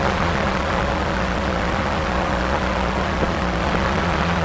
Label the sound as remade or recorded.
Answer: remade